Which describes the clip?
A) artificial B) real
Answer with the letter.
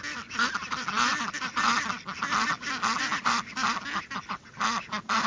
B